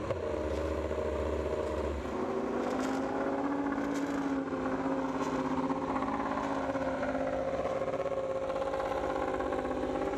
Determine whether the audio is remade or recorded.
recorded